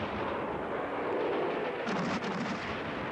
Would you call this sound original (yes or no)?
yes